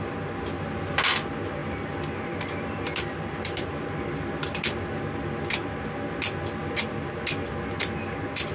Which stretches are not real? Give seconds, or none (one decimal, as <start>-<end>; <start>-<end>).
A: none